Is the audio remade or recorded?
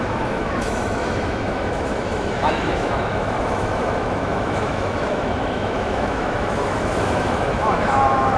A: remade